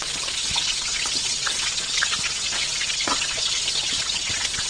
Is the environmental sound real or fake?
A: fake